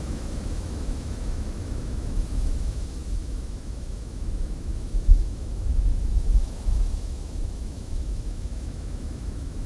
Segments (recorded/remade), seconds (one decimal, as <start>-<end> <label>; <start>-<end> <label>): 0.0-9.7 remade